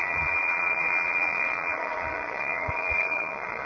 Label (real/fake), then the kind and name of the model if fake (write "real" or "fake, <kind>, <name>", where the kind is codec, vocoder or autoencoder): fake, vocoder, Vocos